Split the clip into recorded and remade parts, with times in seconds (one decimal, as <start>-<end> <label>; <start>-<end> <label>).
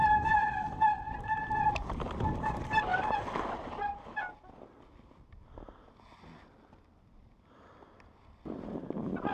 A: 0.0-9.3 recorded